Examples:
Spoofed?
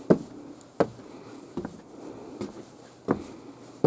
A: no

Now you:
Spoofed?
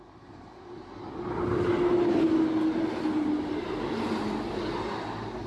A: no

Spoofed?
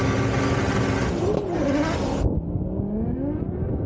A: no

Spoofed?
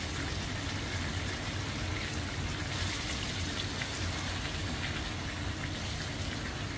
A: no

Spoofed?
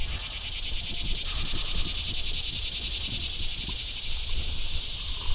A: no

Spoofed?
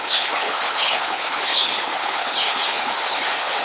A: yes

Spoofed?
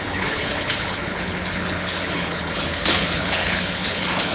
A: yes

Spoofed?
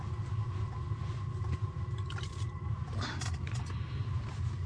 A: no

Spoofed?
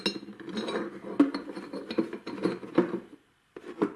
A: no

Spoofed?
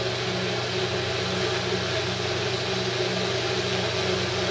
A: no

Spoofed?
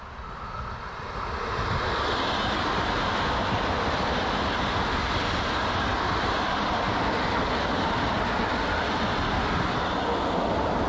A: no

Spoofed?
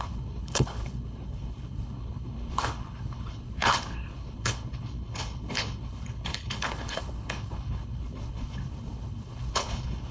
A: yes